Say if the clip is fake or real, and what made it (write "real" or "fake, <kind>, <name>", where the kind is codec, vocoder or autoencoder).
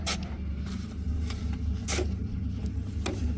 real